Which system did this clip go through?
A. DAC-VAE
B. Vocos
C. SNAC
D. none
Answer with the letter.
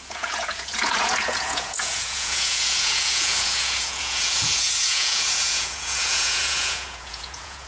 B